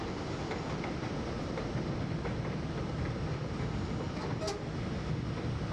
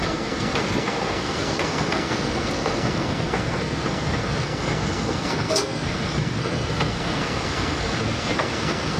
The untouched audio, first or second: first